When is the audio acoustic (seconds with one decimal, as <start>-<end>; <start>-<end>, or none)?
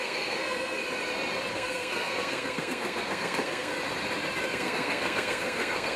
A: 0.8-1.5; 3.7-4.5